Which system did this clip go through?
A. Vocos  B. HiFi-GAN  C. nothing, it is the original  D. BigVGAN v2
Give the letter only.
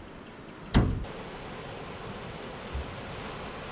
C